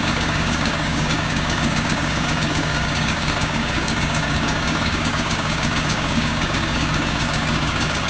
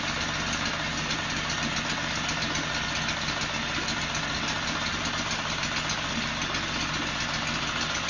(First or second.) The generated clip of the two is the first